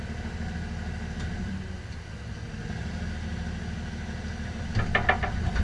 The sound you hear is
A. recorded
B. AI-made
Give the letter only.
A